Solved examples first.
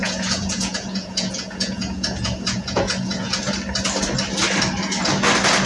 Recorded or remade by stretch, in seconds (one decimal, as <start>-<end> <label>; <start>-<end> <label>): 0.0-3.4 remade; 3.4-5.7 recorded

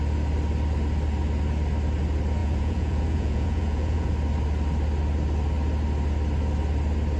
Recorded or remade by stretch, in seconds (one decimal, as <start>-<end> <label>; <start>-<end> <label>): 0.0-2.4 recorded; 2.4-4.1 remade; 4.1-7.2 recorded

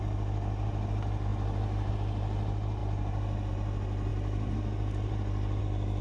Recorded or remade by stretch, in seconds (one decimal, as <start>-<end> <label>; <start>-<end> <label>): 0.0-6.0 recorded

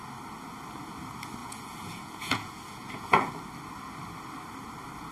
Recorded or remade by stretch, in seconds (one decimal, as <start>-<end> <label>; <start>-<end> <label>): 0.0-1.4 recorded; 1.4-3.3 remade; 3.3-5.1 recorded

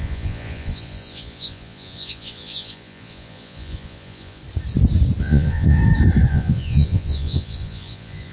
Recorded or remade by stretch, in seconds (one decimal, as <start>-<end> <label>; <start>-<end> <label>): 0.0-4.4 remade; 4.4-5.2 recorded; 5.2-5.8 remade; 5.8-6.3 recorded; 6.3-8.3 remade

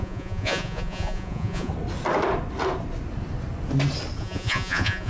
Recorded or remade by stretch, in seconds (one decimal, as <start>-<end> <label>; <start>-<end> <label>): 0.0-1.7 remade; 1.7-4.2 recorded; 4.2-5.1 remade